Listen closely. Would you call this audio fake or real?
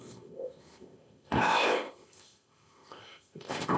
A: fake